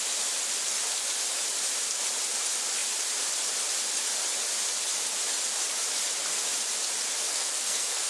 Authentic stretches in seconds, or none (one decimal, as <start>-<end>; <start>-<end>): 0.0-7.3